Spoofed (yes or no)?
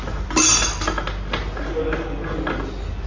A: no